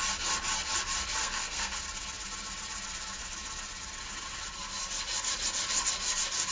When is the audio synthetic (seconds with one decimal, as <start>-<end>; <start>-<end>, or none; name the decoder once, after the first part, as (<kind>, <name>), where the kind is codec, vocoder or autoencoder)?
1.2-1.8 (codec, SNAC)